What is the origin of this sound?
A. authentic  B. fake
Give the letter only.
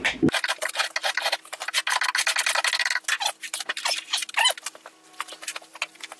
A